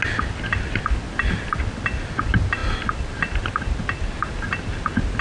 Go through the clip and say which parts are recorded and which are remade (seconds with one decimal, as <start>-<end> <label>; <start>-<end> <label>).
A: 0.0-5.2 recorded